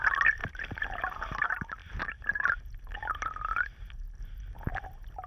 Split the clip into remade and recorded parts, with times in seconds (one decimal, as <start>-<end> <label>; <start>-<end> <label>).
0.0-0.4 recorded; 0.4-1.0 remade; 1.0-5.3 recorded